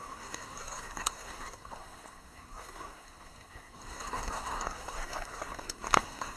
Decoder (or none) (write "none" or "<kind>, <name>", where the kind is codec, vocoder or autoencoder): codec, SNAC